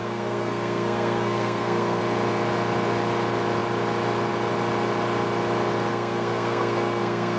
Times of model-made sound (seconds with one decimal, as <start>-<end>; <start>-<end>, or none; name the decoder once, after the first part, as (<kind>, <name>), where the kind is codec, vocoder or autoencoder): 0.0-2.0 (codec, SNAC); 5.9-7.4